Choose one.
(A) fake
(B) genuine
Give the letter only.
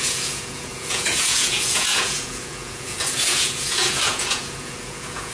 A